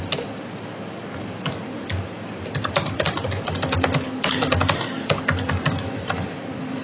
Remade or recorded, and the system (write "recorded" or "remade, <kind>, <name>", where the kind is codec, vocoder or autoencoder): recorded